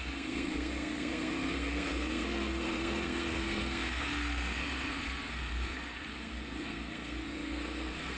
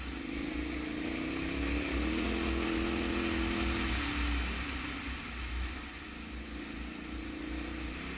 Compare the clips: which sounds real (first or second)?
second